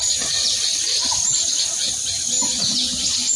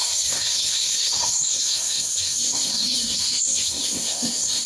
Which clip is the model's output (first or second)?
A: second